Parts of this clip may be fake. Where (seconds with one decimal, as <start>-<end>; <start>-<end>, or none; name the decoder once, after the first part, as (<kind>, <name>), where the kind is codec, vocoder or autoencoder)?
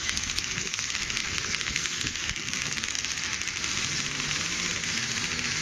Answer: 0.0-3.1 (codec, SNAC)